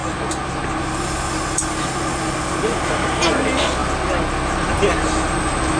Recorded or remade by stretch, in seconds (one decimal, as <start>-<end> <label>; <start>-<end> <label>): 0.0-5.8 recorded